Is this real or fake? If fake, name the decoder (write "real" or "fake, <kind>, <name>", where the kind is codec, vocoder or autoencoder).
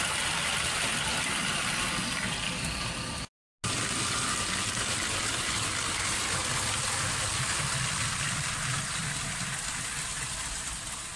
real